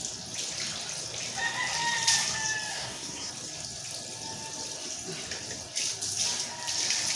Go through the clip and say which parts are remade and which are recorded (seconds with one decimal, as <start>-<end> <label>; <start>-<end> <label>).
0.0-2.7 recorded; 2.7-3.3 remade; 3.3-7.2 recorded